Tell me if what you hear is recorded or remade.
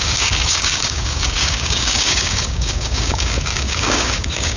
remade